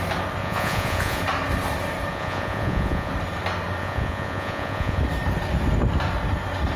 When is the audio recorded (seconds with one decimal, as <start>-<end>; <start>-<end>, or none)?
0.0-0.4; 1.2-2.1; 3.1-3.8; 5.0-6.8